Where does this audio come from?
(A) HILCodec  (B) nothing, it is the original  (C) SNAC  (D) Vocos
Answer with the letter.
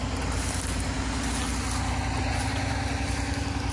B